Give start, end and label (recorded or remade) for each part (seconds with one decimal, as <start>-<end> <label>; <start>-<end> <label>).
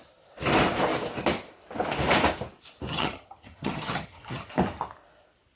0.0-2.9 recorded; 2.9-4.5 remade; 4.5-5.6 recorded